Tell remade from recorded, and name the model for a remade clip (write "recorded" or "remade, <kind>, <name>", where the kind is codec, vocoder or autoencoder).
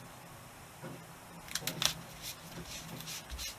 recorded